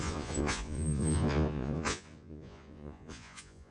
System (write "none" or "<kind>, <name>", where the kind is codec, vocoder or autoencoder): vocoder, Vocos